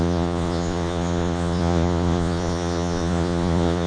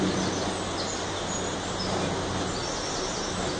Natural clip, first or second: second